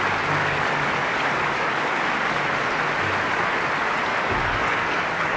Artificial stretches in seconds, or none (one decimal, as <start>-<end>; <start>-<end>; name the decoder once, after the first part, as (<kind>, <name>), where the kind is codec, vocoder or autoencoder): 0.4-2.0 (codec, DAC); 4.1-5.4